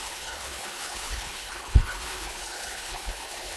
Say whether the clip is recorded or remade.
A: remade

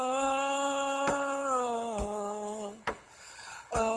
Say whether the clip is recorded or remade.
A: remade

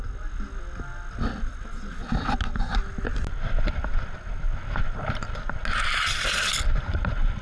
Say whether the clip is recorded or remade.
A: recorded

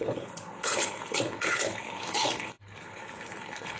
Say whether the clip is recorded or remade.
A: remade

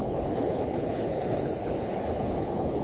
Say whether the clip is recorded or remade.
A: remade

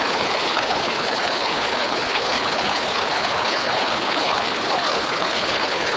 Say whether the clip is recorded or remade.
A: remade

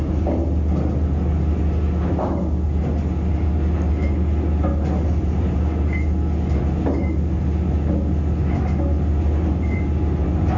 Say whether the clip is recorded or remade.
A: recorded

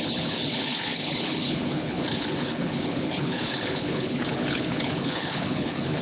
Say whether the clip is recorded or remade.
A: remade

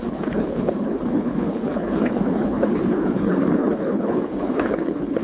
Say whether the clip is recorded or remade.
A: remade